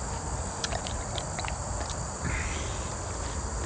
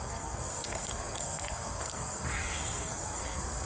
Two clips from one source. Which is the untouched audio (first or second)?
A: first